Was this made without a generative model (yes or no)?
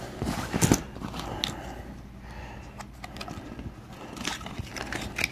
yes